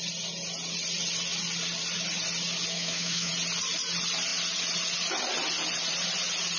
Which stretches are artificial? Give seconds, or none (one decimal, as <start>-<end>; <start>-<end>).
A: 2.7-3.3